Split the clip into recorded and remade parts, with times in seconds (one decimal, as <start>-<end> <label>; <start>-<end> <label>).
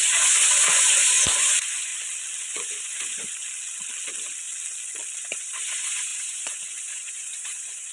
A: 0.0-1.9 remade; 1.9-2.4 recorded; 2.4-3.2 remade; 3.2-5.2 recorded; 5.2-7.9 remade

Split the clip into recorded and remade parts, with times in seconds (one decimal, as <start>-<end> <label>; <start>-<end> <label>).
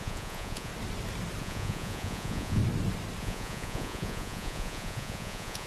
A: 0.0-0.7 remade; 0.7-1.4 recorded; 1.4-2.6 remade; 2.6-3.2 recorded; 3.2-5.7 remade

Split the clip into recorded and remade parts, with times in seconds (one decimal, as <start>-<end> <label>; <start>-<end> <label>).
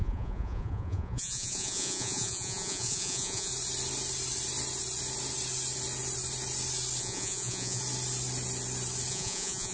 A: 0.0-3.5 remade; 3.5-7.0 recorded; 7.0-7.8 remade; 7.8-9.1 recorded; 9.1-9.7 remade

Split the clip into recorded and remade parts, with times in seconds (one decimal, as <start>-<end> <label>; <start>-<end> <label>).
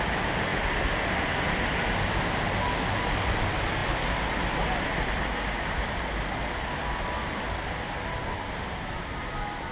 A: 0.0-9.7 recorded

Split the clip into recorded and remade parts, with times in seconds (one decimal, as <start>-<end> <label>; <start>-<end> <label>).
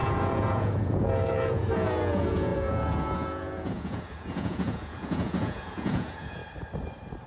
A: 0.0-6.4 remade; 6.4-7.3 recorded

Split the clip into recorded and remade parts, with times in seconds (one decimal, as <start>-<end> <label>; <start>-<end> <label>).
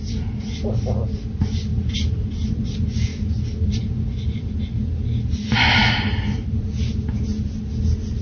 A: 0.0-8.2 recorded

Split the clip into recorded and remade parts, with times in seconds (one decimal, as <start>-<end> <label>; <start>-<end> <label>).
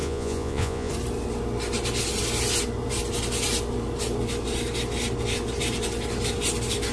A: 0.0-0.9 remade; 0.9-6.9 recorded